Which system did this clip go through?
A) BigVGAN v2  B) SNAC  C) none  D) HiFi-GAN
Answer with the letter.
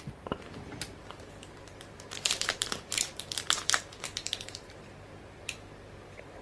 A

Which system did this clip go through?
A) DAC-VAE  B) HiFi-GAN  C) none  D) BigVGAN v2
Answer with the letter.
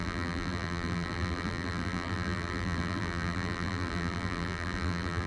D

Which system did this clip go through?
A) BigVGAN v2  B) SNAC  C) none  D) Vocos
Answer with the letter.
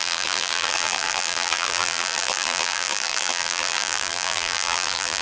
A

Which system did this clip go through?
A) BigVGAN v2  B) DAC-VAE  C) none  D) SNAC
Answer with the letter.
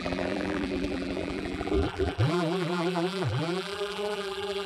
A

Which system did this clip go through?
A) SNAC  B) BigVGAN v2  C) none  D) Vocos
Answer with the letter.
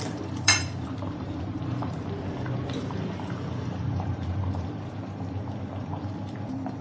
B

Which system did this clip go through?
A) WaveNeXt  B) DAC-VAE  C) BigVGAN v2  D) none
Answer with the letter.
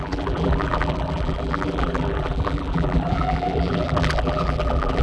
C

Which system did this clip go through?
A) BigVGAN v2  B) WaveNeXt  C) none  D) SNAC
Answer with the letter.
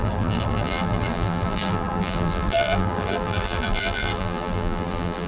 A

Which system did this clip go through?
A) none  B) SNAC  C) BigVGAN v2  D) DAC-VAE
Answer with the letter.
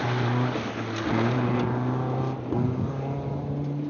A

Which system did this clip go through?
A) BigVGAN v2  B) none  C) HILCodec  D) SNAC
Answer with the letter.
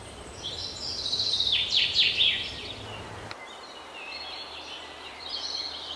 A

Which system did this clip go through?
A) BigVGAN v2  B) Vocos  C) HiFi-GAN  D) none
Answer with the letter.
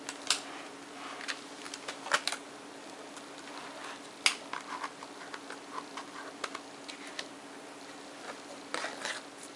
D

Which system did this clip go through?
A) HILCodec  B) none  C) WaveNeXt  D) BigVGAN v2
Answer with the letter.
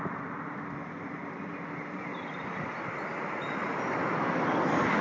D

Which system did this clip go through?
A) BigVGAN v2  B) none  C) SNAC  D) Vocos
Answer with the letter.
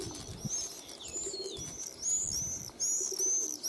B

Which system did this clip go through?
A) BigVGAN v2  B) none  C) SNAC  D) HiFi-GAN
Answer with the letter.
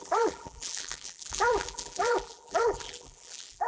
A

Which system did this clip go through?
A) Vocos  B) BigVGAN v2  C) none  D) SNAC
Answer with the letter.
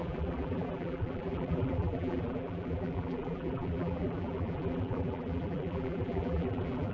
B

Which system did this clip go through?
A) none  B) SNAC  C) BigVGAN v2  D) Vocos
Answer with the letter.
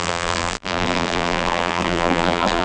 C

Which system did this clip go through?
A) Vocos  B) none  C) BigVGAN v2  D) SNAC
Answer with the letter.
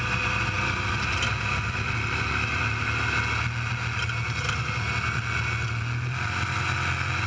B